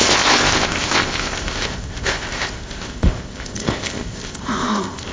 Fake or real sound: fake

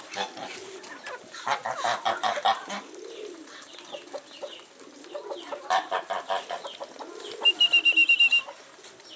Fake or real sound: real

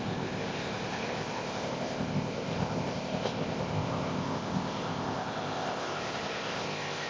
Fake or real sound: fake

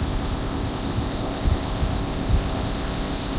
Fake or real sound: fake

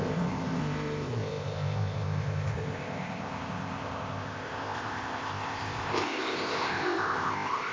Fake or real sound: fake